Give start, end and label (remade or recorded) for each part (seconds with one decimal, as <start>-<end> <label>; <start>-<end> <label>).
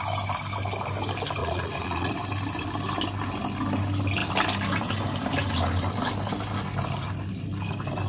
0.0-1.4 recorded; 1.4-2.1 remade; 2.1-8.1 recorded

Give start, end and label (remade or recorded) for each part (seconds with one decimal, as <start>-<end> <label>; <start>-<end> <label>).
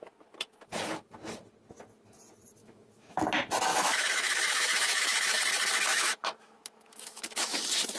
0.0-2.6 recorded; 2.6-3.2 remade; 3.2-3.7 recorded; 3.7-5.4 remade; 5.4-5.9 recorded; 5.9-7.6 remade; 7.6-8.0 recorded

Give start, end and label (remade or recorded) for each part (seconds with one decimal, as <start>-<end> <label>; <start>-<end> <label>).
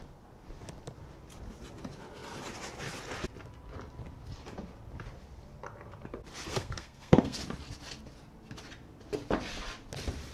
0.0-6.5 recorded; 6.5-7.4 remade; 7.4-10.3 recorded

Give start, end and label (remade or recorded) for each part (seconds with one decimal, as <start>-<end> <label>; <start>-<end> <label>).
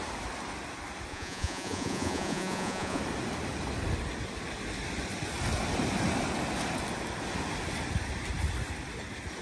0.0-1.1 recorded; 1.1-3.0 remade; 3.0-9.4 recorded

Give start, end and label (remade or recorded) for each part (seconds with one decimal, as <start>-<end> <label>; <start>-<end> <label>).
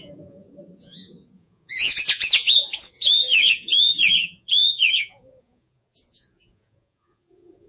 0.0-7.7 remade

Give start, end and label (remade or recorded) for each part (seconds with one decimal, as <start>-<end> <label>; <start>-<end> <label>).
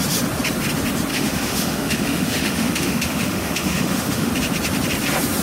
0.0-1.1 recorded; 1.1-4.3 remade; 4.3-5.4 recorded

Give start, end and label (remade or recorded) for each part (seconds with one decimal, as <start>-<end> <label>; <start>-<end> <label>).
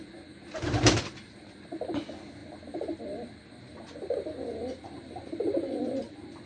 0.0-6.5 recorded